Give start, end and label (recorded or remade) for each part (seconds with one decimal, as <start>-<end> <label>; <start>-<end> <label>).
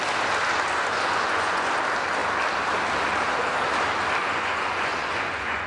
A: 0.0-0.8 recorded; 0.8-1.7 remade; 1.7-4.2 recorded; 4.2-5.7 remade